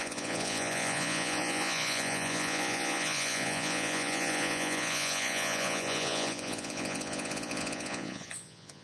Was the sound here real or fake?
fake